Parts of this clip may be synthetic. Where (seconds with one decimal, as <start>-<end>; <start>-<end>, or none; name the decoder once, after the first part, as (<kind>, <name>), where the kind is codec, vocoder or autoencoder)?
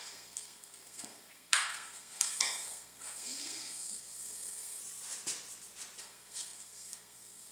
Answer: 0.0-4.8 (codec, SNAC); 6.0-7.5